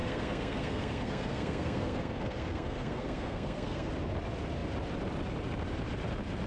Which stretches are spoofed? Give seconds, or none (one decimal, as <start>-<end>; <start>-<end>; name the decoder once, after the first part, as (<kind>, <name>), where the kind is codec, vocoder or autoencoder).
0.0-3.9 (codec, SNAC)